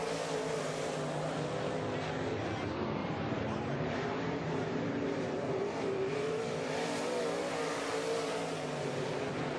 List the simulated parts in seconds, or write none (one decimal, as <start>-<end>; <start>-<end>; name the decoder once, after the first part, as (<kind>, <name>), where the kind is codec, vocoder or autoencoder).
3.0-6.4 (vocoder, BigVGAN v2)